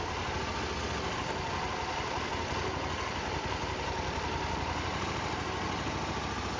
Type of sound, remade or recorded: recorded